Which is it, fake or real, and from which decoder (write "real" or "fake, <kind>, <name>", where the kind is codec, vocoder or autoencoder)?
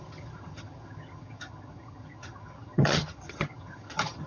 fake, vocoder, HiFi-GAN